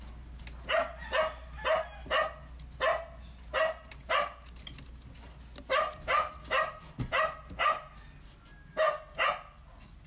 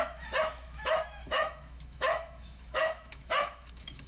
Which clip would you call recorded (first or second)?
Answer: first